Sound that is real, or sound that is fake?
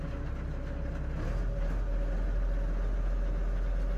real